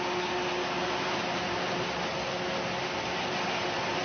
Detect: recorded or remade recorded